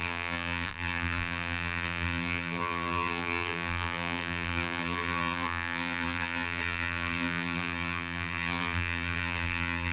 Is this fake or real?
fake